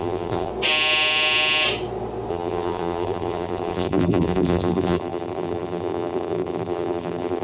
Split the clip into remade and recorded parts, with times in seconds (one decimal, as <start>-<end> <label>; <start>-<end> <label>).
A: 0.0-0.5 remade; 0.5-2.3 recorded; 2.3-7.4 remade

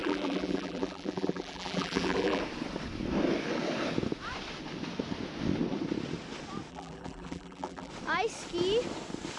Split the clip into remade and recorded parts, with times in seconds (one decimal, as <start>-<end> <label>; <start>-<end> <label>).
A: 0.0-2.4 remade; 2.4-6.7 recorded; 6.7-7.9 remade; 7.9-9.4 recorded

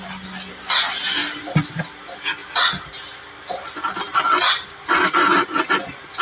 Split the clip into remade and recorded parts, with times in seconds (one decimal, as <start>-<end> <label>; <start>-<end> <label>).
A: 0.0-1.2 recorded; 1.2-1.8 remade; 1.8-6.2 recorded

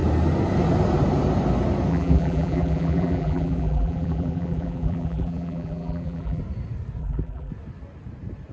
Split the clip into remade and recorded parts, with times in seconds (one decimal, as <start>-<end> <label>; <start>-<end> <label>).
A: 0.0-1.9 recorded; 1.9-6.4 remade; 6.4-7.0 recorded; 7.0-7.5 remade; 7.5-8.5 recorded

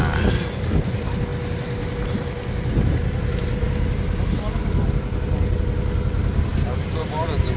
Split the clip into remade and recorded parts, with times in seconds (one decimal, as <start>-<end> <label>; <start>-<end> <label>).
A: 0.0-7.6 recorded

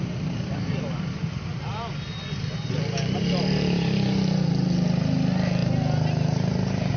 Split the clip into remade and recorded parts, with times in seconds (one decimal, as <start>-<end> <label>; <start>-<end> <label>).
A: 0.0-7.0 recorded

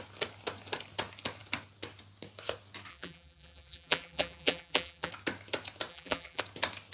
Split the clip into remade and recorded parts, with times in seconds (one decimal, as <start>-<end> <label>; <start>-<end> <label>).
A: 0.0-2.9 recorded; 2.9-5.1 remade; 5.1-5.9 recorded; 5.9-6.4 remade; 6.4-6.9 recorded

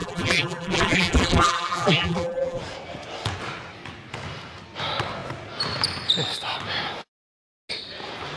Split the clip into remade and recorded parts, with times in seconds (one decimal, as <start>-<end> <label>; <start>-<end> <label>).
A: 0.0-2.6 remade; 2.6-8.4 recorded